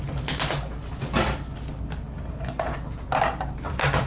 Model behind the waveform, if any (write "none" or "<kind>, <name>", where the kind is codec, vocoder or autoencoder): none